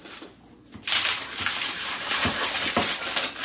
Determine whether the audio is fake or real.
real